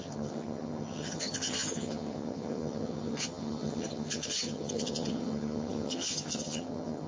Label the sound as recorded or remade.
remade